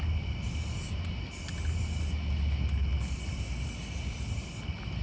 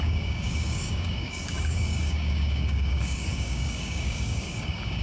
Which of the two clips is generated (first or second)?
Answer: second